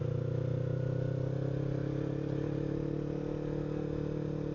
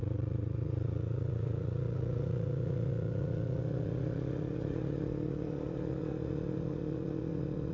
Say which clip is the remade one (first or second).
second